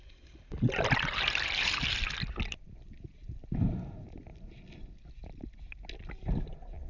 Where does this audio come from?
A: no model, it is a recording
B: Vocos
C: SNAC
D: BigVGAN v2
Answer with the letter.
A